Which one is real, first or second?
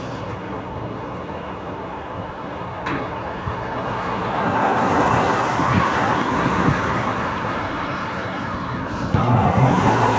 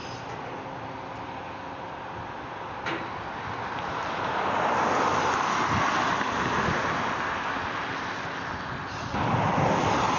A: second